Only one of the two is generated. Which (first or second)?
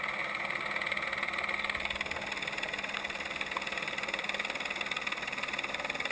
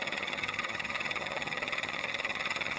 second